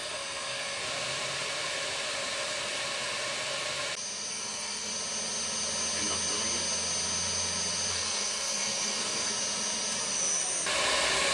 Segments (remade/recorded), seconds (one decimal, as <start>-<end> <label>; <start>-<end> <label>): 0.0-0.8 remade; 0.8-4.3 recorded; 4.3-4.9 remade; 4.9-7.9 recorded; 7.9-9.3 remade; 9.3-11.3 recorded